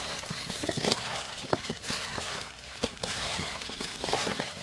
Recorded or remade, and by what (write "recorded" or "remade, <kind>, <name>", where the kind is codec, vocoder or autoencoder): remade, codec, SNAC